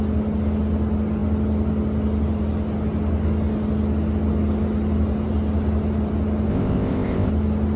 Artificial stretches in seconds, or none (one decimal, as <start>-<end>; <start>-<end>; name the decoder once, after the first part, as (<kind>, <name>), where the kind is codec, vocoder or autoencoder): 6.5-7.3 (codec, ZipCodec)